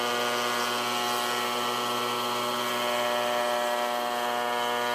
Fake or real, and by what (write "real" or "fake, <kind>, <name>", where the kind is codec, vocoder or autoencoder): real